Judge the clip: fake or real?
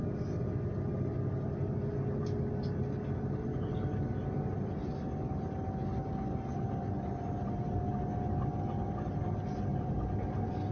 real